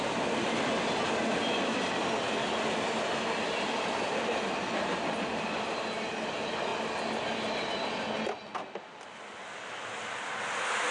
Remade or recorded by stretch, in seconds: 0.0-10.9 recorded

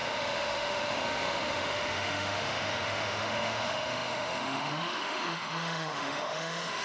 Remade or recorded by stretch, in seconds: 0.0-6.8 remade

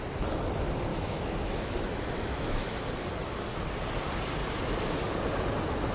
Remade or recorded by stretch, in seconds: 0.0-0.9 recorded; 0.9-2.8 remade; 2.8-5.9 recorded

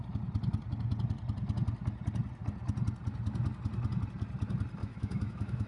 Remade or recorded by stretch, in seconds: 0.0-4.8 recorded; 4.8-5.7 remade